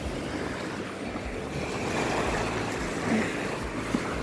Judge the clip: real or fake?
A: real